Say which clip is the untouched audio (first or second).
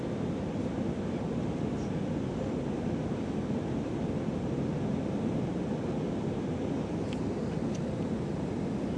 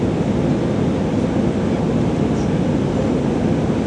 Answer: second